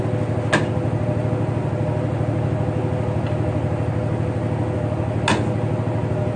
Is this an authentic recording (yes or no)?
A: yes